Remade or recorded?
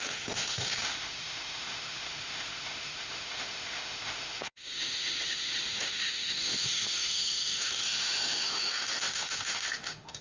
remade